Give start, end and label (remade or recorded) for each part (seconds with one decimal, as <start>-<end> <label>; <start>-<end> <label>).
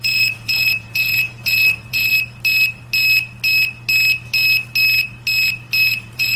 0.0-2.1 remade; 2.1-5.9 recorded; 5.9-6.4 remade